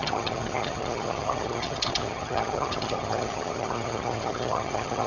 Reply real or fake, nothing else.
fake